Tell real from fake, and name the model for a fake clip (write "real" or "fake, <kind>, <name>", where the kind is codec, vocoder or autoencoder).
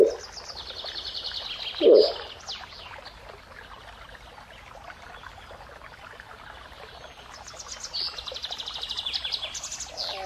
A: real